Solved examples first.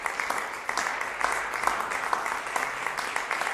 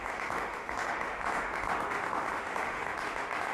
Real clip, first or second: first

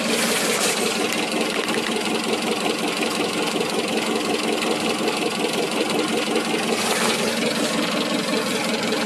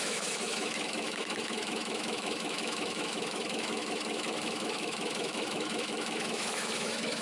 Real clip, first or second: first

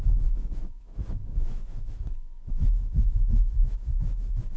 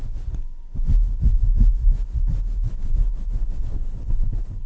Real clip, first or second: second